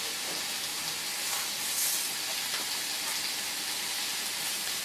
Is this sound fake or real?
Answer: real